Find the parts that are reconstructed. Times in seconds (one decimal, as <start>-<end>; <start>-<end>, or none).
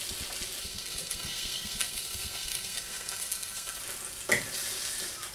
0.6-3.8